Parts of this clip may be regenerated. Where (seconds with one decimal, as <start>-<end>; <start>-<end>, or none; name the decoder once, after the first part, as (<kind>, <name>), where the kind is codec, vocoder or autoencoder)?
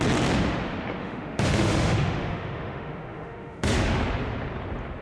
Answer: 1.0-4.0 (autoencoder, DAC-VAE)